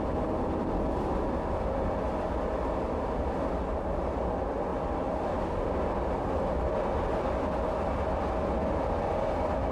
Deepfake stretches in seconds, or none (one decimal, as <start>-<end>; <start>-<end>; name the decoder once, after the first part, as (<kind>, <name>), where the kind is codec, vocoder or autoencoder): none